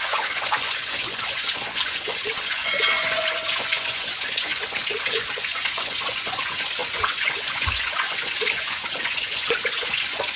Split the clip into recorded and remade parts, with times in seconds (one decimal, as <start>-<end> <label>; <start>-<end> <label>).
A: 0.0-10.4 remade